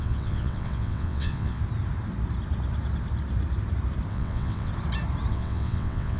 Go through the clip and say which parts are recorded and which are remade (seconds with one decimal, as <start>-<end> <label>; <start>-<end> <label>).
0.0-1.6 remade; 1.6-4.1 recorded; 4.1-4.7 remade; 4.7-5.3 recorded; 5.3-6.2 remade